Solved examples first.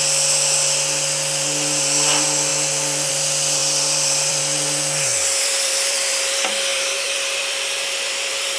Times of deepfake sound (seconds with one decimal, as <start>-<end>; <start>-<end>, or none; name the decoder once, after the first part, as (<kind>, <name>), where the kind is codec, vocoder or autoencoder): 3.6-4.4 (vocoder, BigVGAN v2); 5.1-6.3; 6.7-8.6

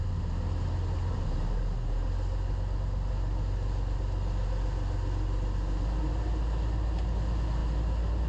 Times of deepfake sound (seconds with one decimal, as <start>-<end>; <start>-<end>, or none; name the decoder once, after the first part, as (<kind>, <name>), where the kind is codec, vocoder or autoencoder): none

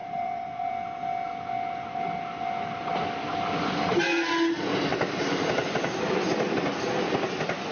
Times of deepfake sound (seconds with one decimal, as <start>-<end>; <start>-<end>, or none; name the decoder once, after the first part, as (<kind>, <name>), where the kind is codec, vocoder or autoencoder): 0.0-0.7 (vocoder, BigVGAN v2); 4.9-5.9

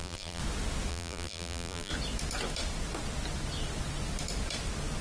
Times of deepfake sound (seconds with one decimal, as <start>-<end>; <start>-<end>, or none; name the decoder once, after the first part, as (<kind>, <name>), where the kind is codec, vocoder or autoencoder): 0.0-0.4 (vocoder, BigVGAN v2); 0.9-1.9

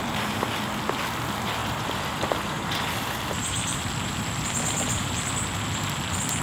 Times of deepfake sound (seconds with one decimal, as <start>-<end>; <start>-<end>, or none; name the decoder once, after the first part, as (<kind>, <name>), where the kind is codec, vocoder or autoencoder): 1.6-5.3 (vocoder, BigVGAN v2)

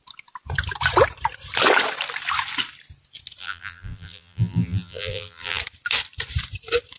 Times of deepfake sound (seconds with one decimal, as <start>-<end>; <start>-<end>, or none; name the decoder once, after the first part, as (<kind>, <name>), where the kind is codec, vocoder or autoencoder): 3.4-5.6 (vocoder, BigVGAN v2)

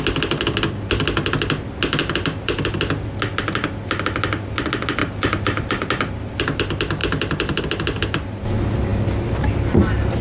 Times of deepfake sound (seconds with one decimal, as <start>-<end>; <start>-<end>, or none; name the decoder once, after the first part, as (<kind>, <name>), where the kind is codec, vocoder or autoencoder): 2.0-2.7 (vocoder, BigVGAN v2); 5.0-5.9; 7.0-7.6